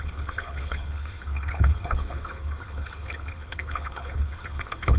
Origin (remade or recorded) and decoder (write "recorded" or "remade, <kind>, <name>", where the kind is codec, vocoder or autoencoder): remade, codec, HILCodec